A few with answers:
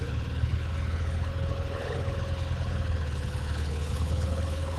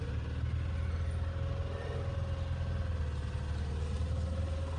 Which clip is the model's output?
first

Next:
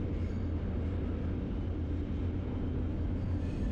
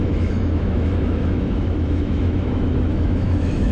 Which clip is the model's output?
second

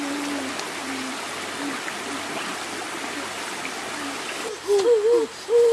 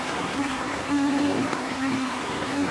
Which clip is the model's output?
second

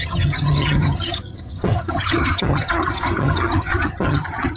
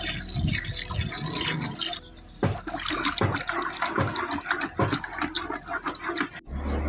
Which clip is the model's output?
first